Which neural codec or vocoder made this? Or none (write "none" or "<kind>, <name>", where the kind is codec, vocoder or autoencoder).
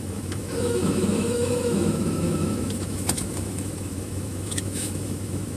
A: autoencoder, DAC-VAE